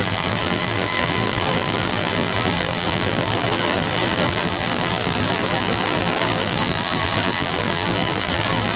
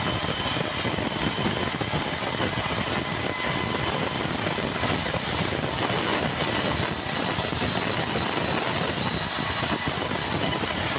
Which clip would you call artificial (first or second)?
first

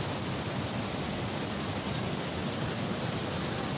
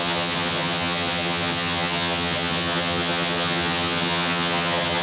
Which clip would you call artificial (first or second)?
second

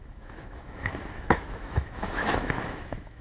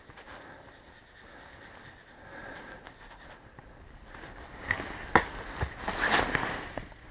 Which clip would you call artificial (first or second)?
first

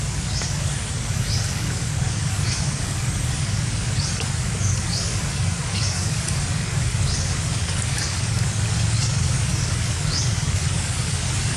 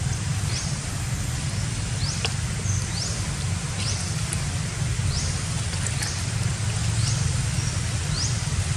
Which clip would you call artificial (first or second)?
first